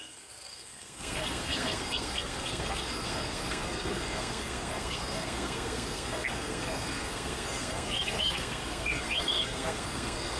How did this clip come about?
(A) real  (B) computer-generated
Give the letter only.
B